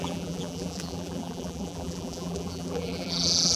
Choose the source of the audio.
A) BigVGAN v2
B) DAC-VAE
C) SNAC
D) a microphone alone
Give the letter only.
A